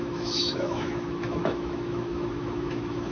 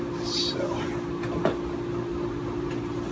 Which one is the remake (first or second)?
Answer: first